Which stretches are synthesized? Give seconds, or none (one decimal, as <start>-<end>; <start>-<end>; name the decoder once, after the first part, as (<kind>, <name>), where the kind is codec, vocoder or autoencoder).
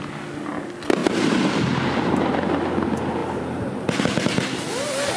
1.0-2.3 (vocoder, BigVGAN v2); 3.2-4.0